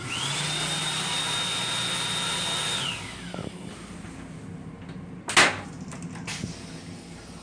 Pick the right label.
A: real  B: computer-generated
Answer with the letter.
A